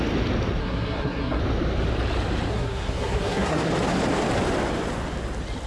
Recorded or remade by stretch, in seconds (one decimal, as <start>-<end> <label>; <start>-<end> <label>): 0.0-0.6 recorded; 0.6-1.4 remade; 1.4-2.5 recorded; 2.5-3.7 remade; 3.7-5.7 recorded